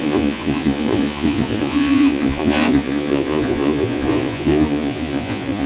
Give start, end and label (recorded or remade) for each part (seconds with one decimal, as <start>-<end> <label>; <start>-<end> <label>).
0.0-5.7 remade